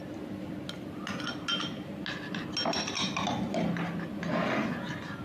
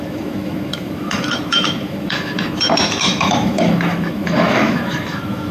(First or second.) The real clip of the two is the first